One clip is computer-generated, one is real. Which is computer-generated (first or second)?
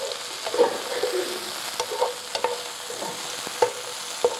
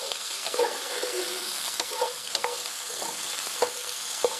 second